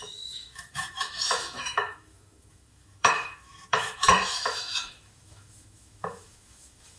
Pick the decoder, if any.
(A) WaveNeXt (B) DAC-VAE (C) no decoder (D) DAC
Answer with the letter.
B